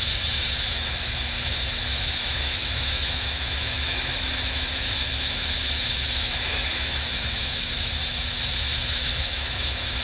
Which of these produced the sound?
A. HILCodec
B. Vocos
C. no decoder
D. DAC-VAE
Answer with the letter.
D